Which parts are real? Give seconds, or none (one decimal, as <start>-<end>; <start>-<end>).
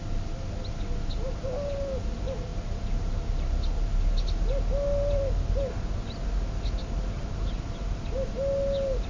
0.0-9.1